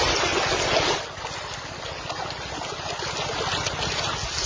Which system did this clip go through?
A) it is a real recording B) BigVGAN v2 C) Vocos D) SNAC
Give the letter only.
A